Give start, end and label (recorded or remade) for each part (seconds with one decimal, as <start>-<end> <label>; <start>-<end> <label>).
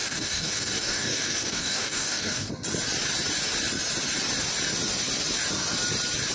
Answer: 0.0-2.5 remade; 2.5-6.3 recorded